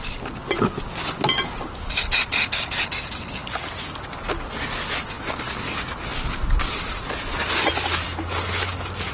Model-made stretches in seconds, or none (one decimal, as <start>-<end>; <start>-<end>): none